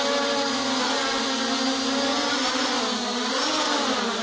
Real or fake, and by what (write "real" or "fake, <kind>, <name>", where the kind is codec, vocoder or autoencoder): real